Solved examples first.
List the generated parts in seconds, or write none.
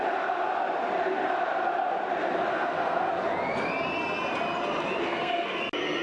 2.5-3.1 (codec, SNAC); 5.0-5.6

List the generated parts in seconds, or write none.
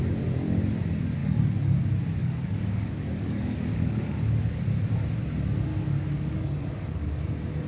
1.2-1.8 (codec, DAC); 2.2-4.6; 5.7-7.2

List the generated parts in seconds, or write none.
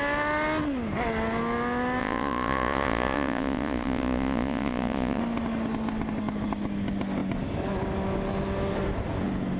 2.0-5.2 (vocoder, Vocos)